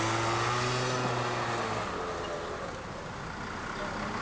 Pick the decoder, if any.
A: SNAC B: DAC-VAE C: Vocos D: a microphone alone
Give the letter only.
D